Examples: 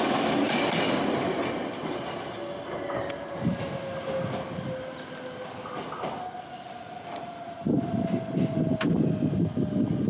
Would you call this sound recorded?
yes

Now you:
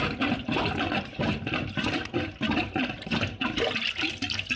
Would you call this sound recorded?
yes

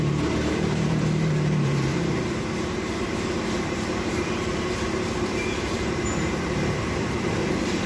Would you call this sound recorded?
no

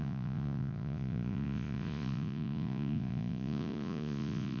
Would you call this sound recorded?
no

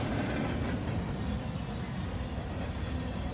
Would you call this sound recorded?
yes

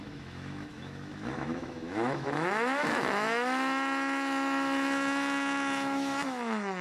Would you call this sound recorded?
no